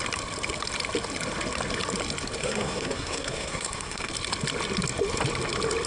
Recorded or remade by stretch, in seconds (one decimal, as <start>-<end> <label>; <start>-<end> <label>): 0.0-2.4 recorded; 2.4-4.1 remade; 4.1-5.9 recorded